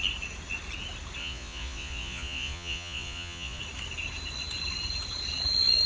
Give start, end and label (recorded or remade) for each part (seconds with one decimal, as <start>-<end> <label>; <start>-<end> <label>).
0.0-1.2 recorded; 1.2-3.6 remade; 3.6-5.9 recorded